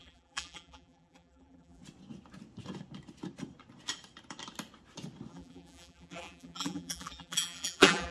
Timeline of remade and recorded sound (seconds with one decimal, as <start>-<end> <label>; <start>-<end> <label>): 0.0-1.8 remade; 1.8-5.3 recorded; 5.3-8.1 remade

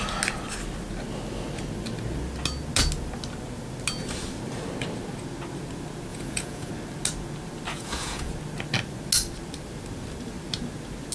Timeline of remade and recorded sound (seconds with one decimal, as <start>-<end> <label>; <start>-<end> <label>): 0.0-6.1 recorded; 6.1-6.7 remade; 6.7-7.7 recorded; 7.7-8.3 remade; 8.3-11.1 recorded

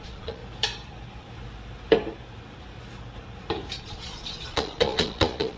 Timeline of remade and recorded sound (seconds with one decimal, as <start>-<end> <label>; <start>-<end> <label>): 0.0-0.4 remade; 0.4-3.8 recorded; 3.8-5.6 remade